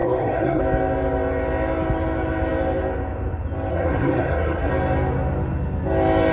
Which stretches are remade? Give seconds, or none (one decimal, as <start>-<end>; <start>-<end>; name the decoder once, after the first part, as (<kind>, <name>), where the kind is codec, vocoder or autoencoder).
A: 0.0-0.6 (codec, SNAC); 3.7-4.7